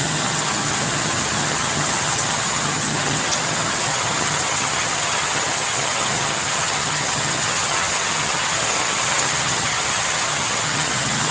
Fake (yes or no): yes